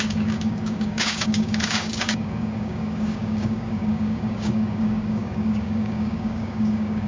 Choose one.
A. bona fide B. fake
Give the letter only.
B